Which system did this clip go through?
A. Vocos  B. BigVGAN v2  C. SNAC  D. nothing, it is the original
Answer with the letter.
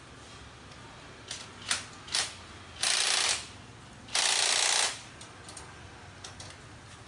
D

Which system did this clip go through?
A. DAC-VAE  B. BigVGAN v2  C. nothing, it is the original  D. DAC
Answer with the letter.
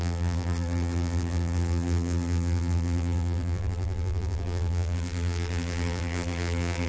B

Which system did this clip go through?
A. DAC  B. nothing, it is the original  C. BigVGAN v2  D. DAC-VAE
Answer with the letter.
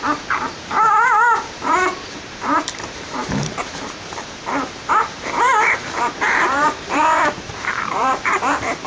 C